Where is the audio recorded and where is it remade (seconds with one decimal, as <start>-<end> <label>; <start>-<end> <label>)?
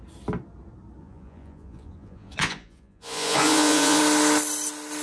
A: 0.0-1.0 recorded; 1.0-4.0 remade; 4.0-5.0 recorded